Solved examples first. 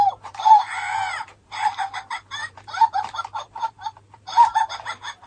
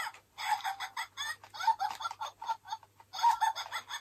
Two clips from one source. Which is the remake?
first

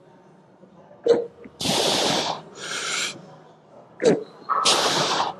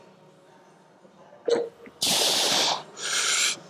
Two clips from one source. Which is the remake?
first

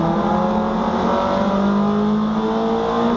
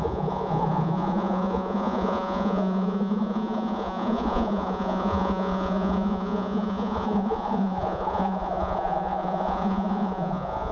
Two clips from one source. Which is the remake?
second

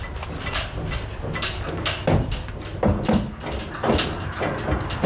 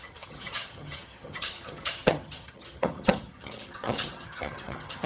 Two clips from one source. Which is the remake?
second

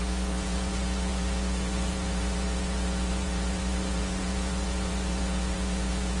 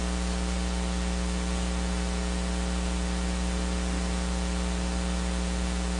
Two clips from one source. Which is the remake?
first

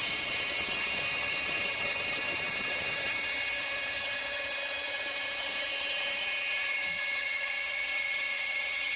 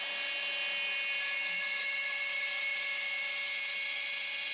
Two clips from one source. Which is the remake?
first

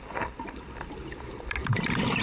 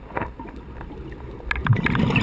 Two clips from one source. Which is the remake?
first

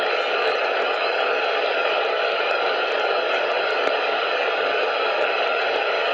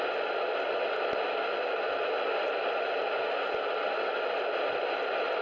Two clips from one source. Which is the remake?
first